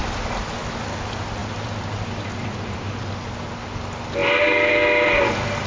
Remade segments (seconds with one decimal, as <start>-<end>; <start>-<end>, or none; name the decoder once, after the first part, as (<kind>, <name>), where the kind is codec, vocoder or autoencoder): 1.4-3.0 (vocoder, BigVGAN v2)